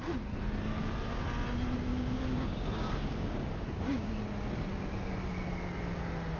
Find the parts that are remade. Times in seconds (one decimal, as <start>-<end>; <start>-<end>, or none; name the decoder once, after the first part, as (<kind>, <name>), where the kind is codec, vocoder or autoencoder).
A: 1.9-4.1 (codec, DAC)